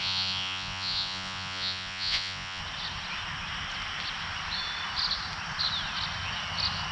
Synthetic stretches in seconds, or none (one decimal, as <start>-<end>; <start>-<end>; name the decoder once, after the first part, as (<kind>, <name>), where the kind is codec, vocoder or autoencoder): 0.0-2.6 (vocoder, Vocos)